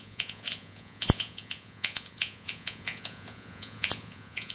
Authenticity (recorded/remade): remade